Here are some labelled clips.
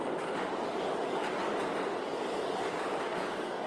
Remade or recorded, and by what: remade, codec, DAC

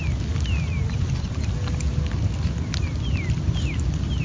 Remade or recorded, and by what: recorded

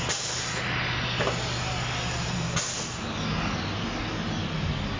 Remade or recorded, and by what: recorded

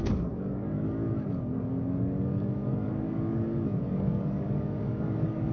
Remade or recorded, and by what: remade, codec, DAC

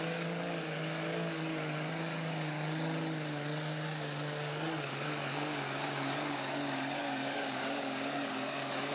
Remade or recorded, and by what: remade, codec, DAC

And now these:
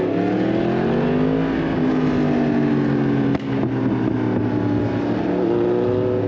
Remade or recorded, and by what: recorded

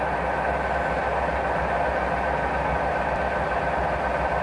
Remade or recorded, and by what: recorded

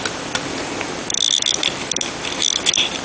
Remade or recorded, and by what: recorded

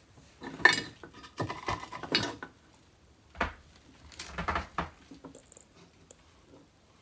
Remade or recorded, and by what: recorded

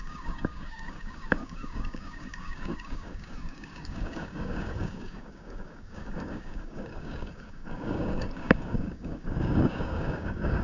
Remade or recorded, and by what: remade, codec, DAC